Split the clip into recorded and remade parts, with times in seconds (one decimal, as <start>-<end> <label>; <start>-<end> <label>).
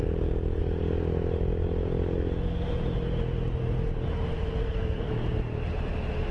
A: 0.0-4.6 recorded; 4.6-5.1 remade; 5.1-6.3 recorded